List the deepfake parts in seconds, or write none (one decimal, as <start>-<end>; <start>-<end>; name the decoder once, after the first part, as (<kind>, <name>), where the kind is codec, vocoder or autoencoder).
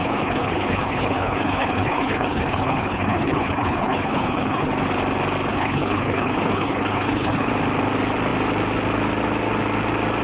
0.0-4.7 (codec, HILCodec); 5.5-7.5